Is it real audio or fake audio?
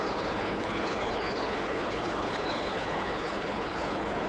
fake